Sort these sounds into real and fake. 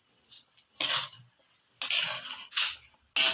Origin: real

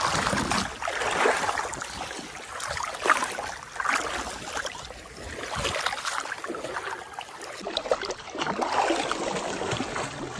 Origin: real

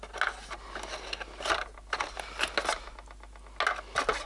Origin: real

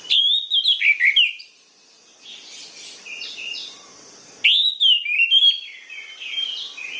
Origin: real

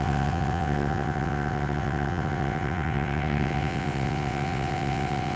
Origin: fake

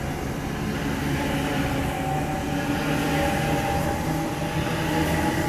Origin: real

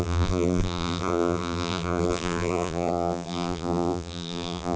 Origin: fake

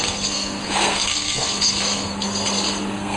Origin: fake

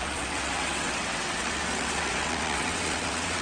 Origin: fake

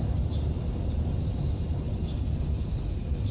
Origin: real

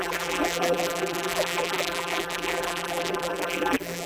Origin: fake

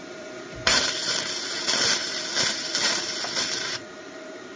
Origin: fake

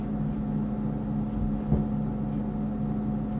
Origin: real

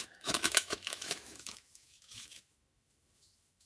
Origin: fake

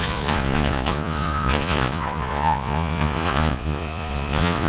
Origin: fake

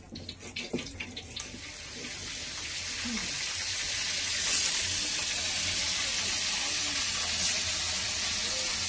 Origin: real